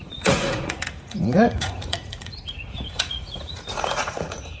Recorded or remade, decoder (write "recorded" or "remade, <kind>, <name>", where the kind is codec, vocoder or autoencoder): remade, vocoder, Vocos